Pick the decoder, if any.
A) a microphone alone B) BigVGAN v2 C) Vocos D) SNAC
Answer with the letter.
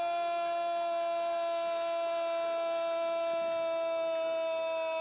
A